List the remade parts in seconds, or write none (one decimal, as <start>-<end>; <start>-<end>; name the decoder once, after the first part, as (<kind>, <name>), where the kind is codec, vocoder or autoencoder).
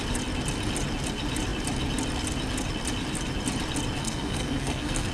4.0-5.1 (codec, SNAC)